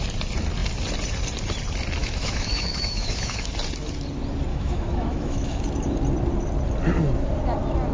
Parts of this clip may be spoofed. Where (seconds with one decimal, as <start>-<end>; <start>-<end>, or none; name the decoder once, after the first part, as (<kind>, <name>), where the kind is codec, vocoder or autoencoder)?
2.0-3.5 (autoencoder, DAC-VAE); 4.5-5.6